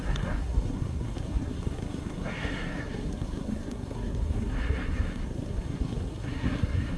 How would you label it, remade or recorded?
remade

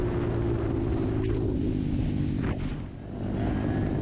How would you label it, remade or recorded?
recorded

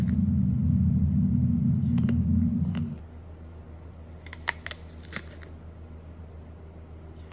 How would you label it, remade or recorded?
recorded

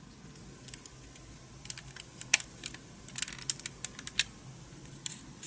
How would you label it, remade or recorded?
recorded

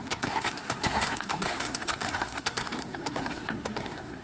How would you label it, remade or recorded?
remade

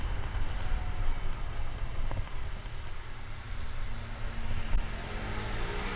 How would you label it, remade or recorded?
recorded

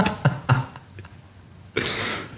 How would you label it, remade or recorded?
recorded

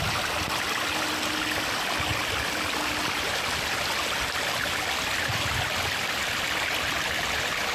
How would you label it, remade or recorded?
recorded